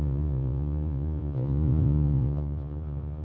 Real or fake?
fake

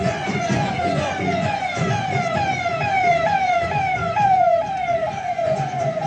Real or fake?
fake